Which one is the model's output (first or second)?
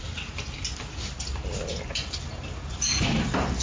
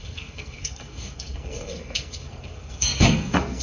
second